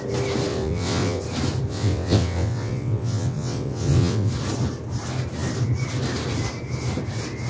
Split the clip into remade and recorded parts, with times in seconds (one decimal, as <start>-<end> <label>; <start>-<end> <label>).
0.0-0.5 recorded; 0.5-1.2 remade; 1.2-1.7 recorded; 1.7-4.3 remade; 4.3-7.5 recorded